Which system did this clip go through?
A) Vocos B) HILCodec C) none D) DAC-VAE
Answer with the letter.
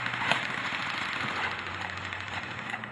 A